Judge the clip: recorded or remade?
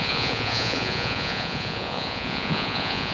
remade